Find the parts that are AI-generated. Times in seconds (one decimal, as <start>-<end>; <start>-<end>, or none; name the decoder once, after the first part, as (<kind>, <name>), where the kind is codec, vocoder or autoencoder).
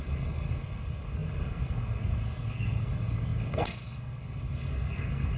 0.0-5.4 (codec, SNAC)